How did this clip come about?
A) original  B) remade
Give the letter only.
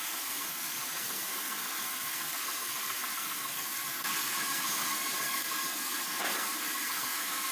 B